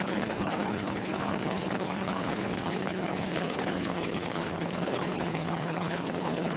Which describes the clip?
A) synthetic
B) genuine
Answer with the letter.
A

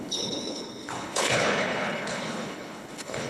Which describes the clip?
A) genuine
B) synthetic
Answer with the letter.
B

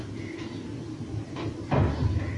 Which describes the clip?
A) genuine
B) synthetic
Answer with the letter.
A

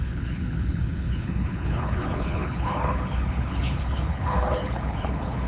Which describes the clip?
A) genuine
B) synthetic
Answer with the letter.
B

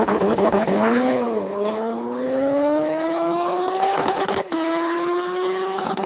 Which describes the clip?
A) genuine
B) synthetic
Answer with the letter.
B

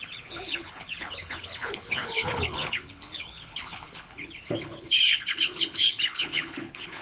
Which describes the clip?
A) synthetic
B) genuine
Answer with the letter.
A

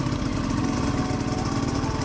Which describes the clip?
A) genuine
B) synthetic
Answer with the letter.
A